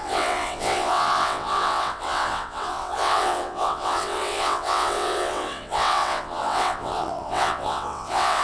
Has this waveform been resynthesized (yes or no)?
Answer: yes